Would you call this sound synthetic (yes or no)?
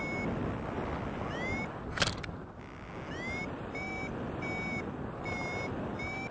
no